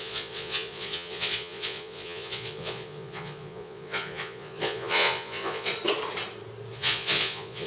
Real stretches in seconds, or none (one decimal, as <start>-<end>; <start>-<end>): 5.7-6.7